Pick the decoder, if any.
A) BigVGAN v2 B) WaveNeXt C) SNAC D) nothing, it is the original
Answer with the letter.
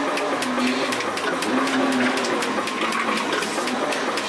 D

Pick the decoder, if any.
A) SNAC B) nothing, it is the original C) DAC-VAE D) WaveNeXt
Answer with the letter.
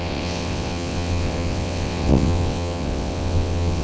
D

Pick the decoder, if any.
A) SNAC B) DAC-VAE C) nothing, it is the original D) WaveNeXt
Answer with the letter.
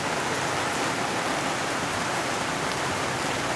C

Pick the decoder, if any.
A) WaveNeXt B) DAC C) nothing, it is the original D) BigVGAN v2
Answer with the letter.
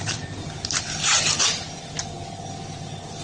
C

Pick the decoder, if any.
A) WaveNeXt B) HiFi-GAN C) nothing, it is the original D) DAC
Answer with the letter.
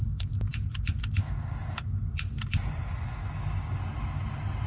C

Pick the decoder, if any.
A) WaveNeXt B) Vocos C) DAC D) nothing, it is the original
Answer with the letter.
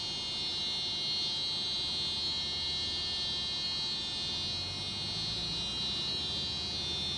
D